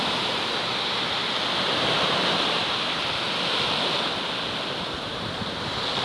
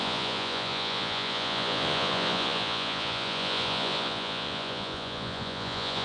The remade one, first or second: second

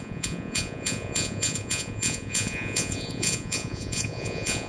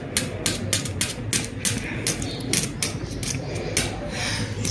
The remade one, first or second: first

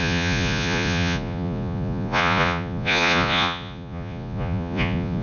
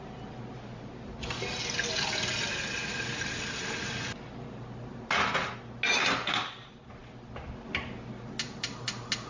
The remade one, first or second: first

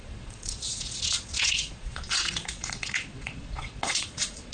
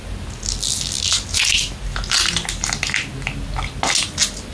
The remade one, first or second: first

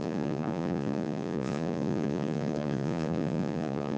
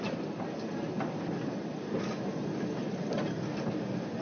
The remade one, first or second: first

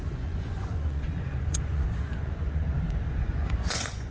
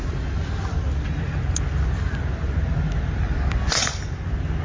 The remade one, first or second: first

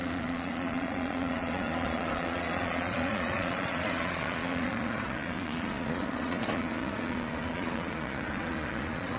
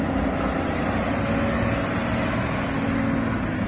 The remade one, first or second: first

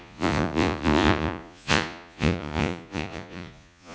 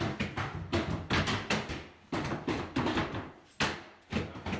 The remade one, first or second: first